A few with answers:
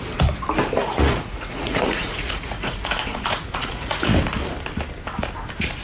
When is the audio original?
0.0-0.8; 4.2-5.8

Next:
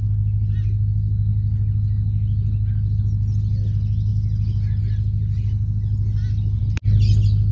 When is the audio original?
0.0-7.5

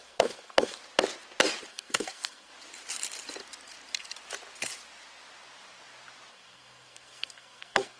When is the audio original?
0.8-1.7; 2.5-6.3

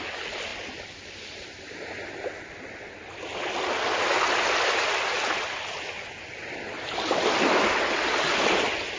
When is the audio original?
0.0-9.0